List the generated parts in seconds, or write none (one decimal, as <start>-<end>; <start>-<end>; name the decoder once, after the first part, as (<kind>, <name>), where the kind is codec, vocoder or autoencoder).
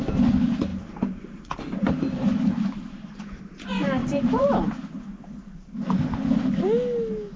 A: 0.7-3.4 (vocoder, BigVGAN v2); 4.0-4.7